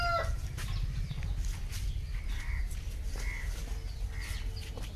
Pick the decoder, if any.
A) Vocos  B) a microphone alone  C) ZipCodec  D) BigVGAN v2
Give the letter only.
B